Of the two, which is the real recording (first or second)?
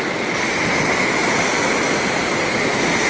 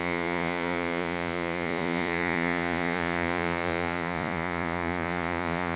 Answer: first